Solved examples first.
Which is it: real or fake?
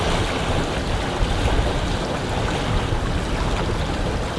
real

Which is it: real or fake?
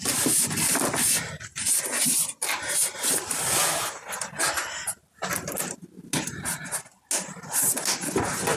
real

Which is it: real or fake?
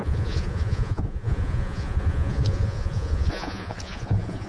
fake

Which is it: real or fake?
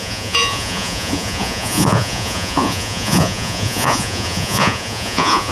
fake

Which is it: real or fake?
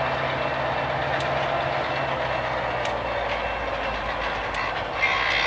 real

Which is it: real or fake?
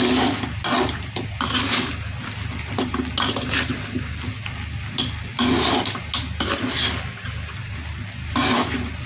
real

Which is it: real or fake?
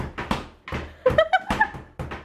real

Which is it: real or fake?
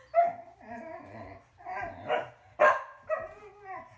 real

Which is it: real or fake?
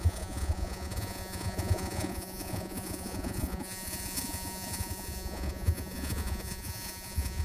fake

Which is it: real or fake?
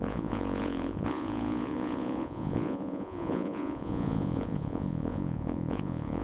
fake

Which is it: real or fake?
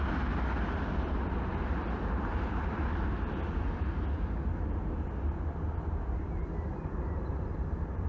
real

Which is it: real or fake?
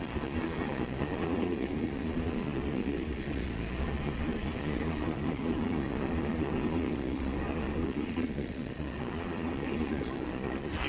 fake